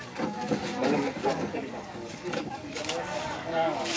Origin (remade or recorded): remade